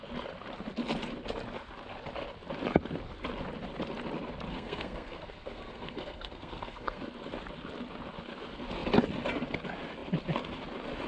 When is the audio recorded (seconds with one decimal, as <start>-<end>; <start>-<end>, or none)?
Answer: 0.0-4.5; 7.0-11.1